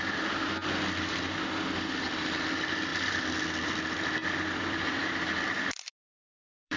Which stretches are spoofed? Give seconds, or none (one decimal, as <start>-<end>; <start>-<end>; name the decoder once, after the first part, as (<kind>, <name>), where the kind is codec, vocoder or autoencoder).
2.9-6.8 (vocoder, BigVGAN v2)